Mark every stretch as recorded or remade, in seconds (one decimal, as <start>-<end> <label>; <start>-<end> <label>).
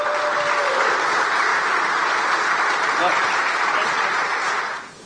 0.0-1.5 recorded; 1.5-4.6 remade; 4.6-5.1 recorded